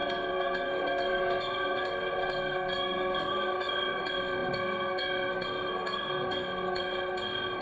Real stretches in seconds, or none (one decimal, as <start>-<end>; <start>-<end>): none